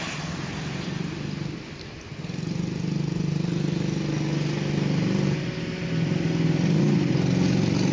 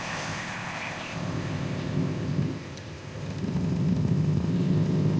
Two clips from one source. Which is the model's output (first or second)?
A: second